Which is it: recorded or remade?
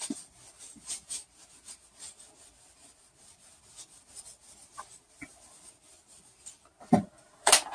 recorded